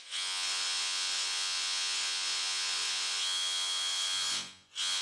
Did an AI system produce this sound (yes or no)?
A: yes